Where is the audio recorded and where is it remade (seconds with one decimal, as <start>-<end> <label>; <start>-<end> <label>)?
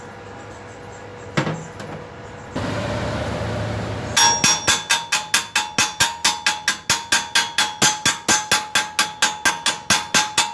0.0-10.5 recorded